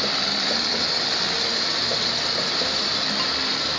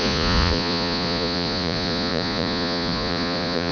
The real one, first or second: first